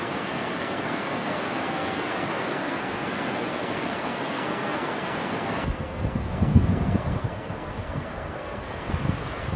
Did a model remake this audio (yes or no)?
yes